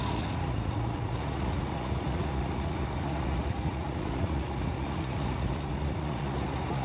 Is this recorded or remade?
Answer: remade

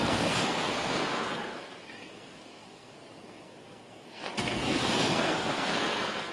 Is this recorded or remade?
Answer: remade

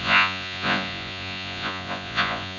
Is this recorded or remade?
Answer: remade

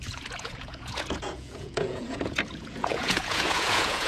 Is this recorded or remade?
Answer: remade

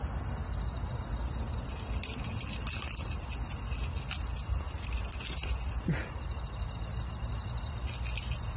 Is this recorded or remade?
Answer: recorded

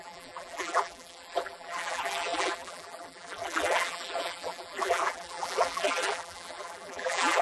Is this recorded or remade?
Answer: remade